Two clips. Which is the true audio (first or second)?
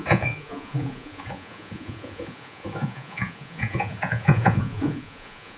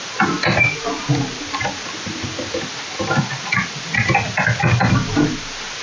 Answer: second